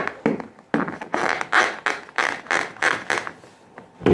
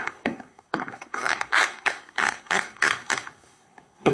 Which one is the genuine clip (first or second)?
first